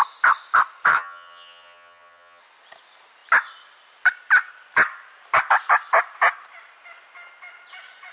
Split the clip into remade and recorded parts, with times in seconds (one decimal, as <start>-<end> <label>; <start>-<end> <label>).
0.0-0.9 recorded; 0.9-2.4 remade; 2.4-8.1 recorded